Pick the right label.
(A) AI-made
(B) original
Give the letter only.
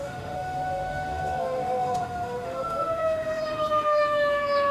A